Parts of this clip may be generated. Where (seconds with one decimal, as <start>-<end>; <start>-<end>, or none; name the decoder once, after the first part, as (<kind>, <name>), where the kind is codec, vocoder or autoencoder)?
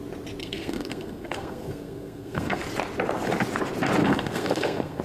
0.4-2.6 (codec, SNAC); 4.0-5.0